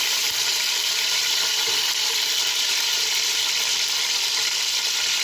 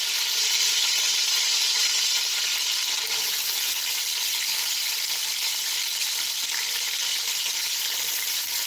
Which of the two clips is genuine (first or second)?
second